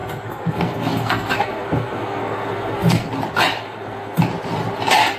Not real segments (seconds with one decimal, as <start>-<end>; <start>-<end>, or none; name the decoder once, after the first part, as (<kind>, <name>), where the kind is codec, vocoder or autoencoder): 0.0-3.1 (codec, SNAC); 3.6-4.2